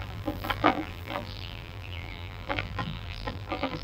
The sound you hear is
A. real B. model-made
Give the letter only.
B